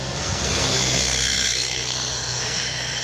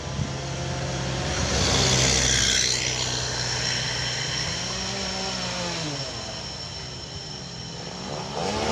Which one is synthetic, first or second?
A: first